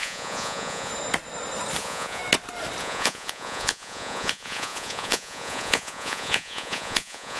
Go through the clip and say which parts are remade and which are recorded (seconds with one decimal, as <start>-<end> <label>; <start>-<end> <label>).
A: 0.0-0.9 remade; 0.9-1.8 recorded; 1.8-2.2 remade; 2.2-2.8 recorded; 2.8-7.4 remade